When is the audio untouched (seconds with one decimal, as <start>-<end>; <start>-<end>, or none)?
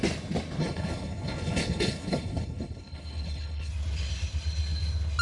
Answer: 0.0-0.6; 3.7-5.2